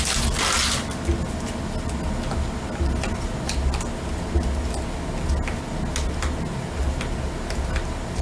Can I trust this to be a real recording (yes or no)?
yes